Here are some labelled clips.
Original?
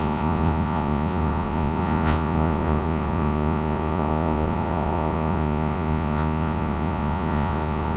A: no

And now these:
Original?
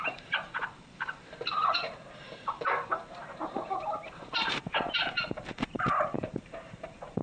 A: no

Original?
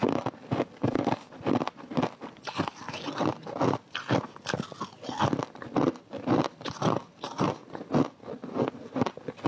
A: yes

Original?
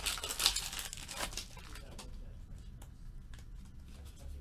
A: yes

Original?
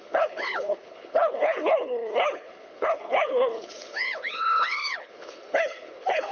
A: no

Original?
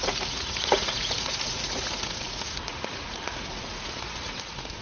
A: no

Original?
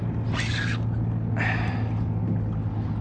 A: yes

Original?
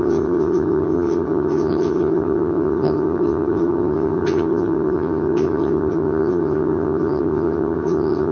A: no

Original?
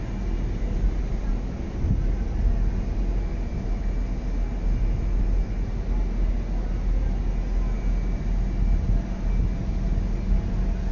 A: yes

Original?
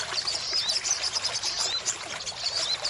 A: no